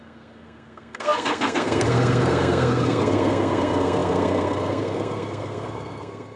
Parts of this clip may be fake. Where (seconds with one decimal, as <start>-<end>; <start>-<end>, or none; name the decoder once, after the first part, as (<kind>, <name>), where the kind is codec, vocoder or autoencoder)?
0.0-6.4 (codec, SNAC)